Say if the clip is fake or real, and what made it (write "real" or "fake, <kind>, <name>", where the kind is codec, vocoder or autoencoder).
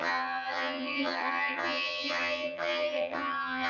fake, vocoder, HiFi-GAN